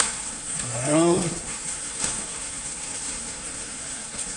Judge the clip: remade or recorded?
remade